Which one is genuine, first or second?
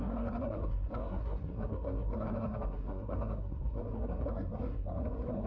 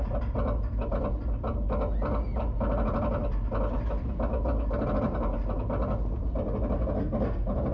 second